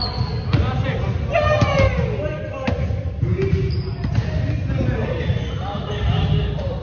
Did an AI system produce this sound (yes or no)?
no